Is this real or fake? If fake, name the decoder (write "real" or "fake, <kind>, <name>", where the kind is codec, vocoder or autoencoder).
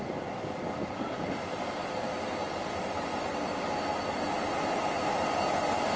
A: real